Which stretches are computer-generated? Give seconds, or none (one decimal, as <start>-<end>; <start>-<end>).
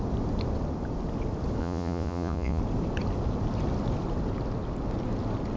1.6-2.6